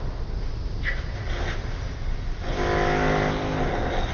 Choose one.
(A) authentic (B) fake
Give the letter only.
A